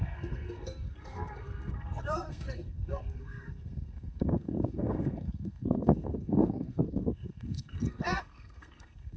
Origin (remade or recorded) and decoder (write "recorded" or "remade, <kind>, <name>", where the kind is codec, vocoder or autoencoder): remade, codec, SNAC